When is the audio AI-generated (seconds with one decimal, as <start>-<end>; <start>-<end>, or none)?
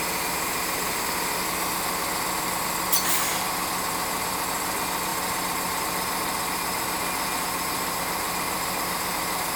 none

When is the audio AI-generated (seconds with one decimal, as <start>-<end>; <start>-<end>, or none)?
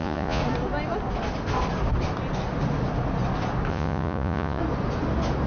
0.0-0.4; 3.7-4.6